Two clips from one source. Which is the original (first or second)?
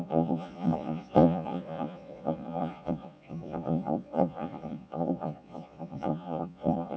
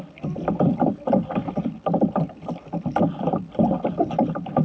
second